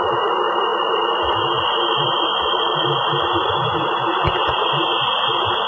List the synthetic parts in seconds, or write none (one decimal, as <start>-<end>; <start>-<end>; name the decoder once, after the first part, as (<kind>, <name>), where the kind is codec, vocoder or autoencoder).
2.3-4.7 (vocoder, BigVGAN v2)